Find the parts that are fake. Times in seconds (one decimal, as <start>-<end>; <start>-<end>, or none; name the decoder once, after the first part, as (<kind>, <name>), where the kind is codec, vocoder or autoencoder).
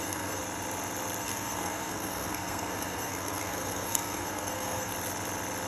0.0-0.4 (codec, SNAC); 1.2-4.9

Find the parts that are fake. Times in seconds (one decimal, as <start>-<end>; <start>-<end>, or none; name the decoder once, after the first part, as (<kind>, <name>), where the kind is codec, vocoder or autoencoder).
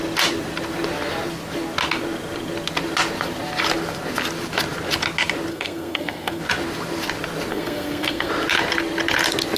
5.5-6.4 (codec, SNAC); 7.5-8.3